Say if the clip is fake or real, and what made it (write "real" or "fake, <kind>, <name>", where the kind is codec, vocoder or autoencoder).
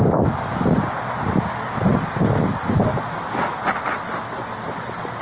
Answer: real